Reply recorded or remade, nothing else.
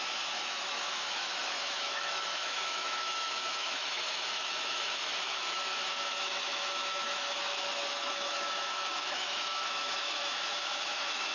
remade